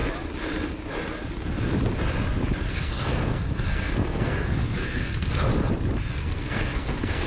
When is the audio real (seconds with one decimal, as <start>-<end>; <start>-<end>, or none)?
0.0-2.7; 5.5-6.1

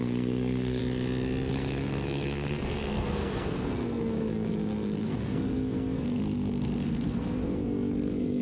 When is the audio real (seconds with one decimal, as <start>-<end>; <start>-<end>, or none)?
0.8-1.5

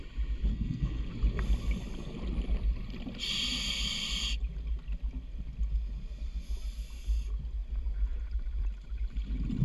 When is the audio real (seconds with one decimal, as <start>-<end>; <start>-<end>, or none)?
0.0-0.5; 1.1-9.6

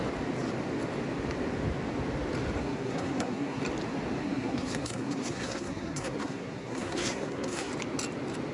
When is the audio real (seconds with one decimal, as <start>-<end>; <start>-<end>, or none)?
0.0-2.6; 3.6-4.2; 7.7-8.5

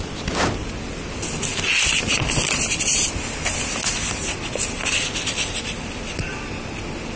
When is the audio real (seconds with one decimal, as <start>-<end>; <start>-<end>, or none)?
0.0-7.2

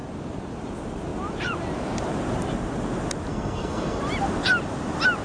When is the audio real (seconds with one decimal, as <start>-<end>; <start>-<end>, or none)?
0.0-3.3; 4.0-5.2